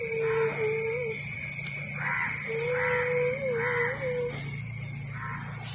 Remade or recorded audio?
recorded